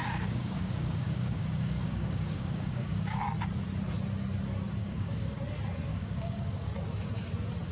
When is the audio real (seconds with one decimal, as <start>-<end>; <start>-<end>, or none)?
3.2-4.8; 5.4-5.9; 6.7-7.7

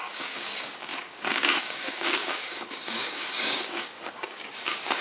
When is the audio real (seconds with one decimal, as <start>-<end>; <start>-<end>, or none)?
none

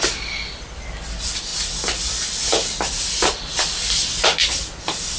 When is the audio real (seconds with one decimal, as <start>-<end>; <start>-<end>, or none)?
0.0-5.2

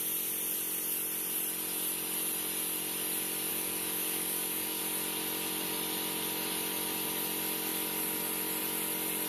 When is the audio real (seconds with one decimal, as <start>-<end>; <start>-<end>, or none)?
0.0-3.5; 4.8-9.3

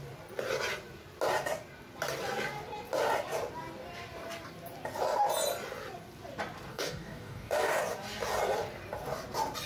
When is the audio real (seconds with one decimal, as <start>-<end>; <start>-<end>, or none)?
0.0-6.7; 7.8-9.7